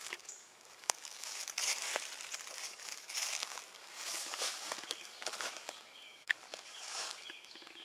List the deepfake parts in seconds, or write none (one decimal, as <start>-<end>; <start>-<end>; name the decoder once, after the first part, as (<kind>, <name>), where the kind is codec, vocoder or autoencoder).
0.0-1.9 (codec, DAC); 2.5-7.8